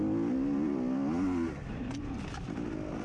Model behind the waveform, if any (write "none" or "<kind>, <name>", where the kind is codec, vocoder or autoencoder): none